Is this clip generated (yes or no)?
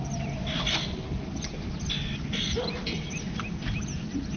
no